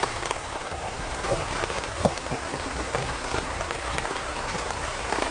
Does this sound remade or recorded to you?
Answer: remade